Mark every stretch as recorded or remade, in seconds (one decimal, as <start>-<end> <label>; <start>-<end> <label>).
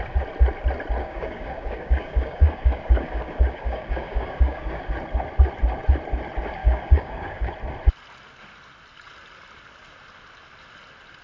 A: 0.0-1.0 recorded; 1.0-4.8 remade; 4.8-6.6 recorded; 6.6-7.5 remade; 7.5-11.2 recorded